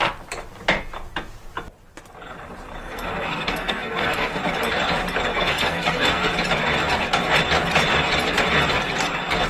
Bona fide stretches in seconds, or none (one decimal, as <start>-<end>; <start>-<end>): 0.0-2.8; 4.4-5.3; 6.3-9.5

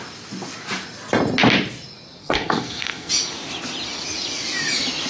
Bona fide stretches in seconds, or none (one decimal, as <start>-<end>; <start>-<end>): 0.0-2.2; 3.1-5.1

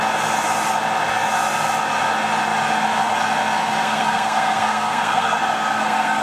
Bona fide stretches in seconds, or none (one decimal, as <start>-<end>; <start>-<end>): 0.0-3.7